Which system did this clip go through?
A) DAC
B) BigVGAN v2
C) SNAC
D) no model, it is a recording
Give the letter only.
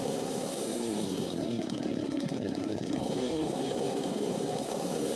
C